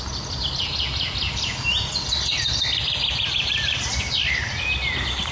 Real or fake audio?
real